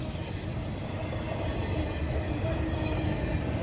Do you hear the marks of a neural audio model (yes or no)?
no